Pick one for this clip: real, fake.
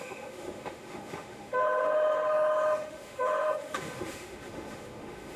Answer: fake